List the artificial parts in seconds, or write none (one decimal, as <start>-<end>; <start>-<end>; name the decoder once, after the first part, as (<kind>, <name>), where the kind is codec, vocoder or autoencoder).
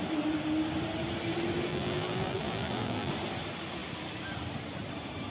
1.7-3.1 (vocoder, BigVGAN v2)